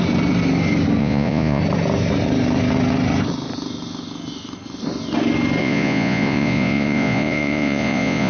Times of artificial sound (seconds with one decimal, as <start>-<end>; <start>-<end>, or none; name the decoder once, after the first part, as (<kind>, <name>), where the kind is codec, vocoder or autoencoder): 1.0-1.6 (vocoder, Vocos); 5.6-8.3